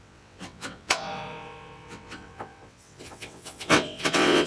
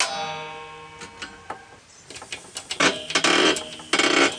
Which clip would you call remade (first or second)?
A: first